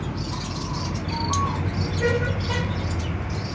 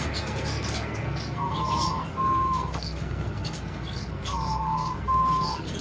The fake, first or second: second